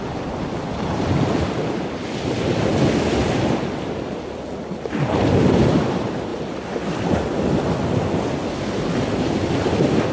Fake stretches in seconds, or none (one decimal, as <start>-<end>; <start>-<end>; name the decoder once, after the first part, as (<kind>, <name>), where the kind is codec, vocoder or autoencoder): none